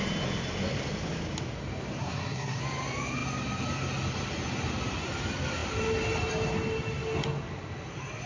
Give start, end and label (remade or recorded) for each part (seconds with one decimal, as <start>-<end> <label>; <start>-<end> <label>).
0.0-2.0 recorded; 2.0-2.6 remade; 2.6-8.3 recorded